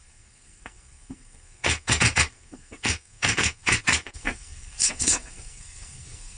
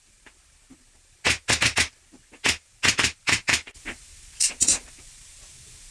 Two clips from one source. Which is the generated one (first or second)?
first